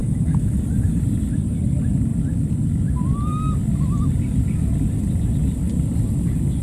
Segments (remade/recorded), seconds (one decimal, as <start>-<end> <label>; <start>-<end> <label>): 0.0-0.5 remade; 0.5-6.6 recorded